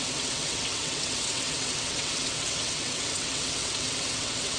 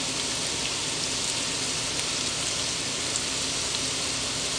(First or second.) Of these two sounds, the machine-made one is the first